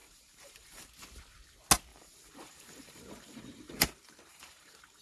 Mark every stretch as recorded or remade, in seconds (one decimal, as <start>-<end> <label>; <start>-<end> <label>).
0.0-0.9 remade; 0.9-1.9 recorded; 1.9-5.0 remade